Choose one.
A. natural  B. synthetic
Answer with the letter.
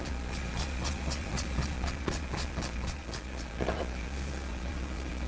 B